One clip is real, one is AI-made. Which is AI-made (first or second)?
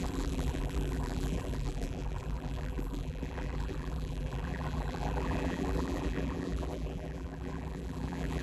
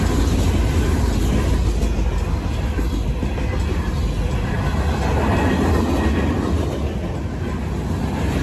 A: first